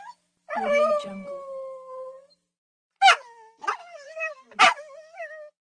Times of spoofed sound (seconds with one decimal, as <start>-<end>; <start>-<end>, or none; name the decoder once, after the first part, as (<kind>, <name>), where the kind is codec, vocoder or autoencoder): 3.8-4.6 (vocoder, BigVGAN v2)